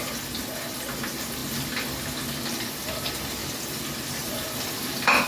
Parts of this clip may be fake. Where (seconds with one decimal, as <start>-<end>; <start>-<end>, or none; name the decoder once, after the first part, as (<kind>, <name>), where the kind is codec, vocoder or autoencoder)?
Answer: none